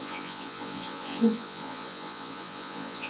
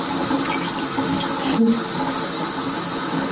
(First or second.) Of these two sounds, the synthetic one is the first